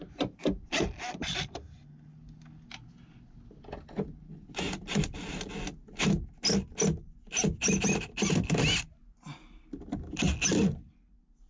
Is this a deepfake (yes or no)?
no